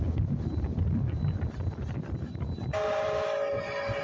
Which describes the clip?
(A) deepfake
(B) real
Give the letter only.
B